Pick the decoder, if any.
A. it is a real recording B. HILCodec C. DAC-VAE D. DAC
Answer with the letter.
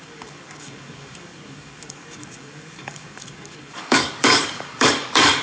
D